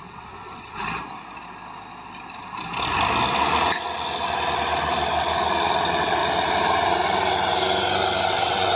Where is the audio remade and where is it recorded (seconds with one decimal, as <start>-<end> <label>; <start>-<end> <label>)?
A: 0.0-0.8 remade; 0.8-5.8 recorded; 5.8-6.2 remade; 6.2-8.3 recorded; 8.3-8.8 remade